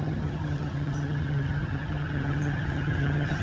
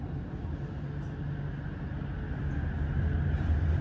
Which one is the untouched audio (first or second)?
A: second